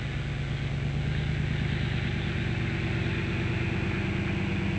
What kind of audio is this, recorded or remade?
recorded